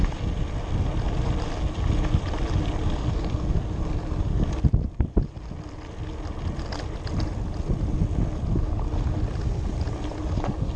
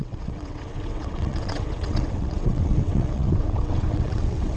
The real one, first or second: first